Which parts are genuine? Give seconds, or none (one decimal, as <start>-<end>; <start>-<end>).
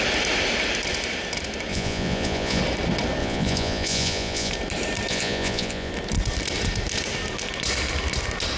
0.0-1.7; 2.6-3.2; 4.5-5.1; 5.9-8.6